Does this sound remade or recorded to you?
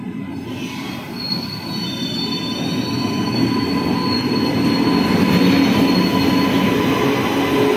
recorded